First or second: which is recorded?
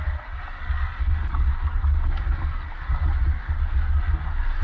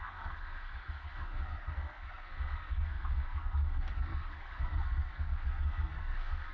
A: first